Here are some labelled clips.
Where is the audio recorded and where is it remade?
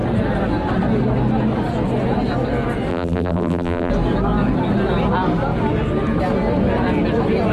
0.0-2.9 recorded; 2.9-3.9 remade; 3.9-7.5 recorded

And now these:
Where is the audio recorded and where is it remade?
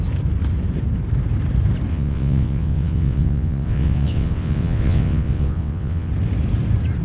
0.0-1.9 recorded; 1.9-6.1 remade; 6.1-7.0 recorded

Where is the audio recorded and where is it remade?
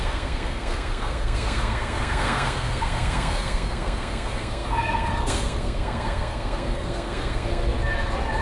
0.0-7.6 remade; 7.6-8.4 recorded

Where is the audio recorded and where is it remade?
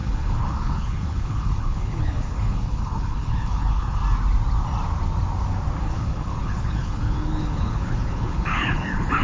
0.0-4.0 remade; 4.0-5.8 recorded; 5.8-9.2 remade